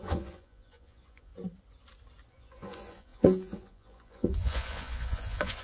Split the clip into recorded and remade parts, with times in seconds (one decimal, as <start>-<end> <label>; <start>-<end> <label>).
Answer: 0.0-1.3 remade; 1.3-2.3 recorded; 2.3-5.6 remade